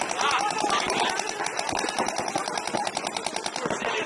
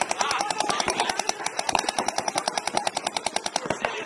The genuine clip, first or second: first